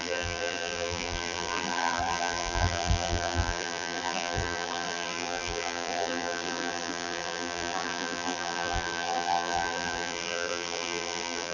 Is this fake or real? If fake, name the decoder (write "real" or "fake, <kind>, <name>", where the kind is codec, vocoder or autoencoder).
fake, vocoder, BigVGAN v2